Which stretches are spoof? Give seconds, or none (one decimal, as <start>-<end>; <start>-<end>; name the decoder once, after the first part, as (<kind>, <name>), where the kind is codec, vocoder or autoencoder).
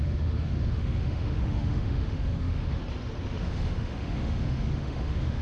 0.0-2.8 (autoencoder, DAC-VAE); 3.4-5.4